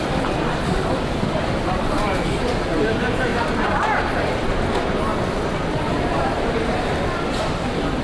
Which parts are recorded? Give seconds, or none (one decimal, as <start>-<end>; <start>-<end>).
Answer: 3.3-4.4; 5.1-5.6